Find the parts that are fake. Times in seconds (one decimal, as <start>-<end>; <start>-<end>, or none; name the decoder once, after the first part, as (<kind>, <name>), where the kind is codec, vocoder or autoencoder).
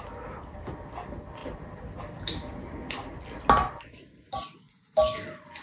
1.4-2.0 (vocoder, BigVGAN v2)